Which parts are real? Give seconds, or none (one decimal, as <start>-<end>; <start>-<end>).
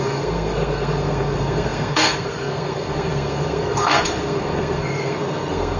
none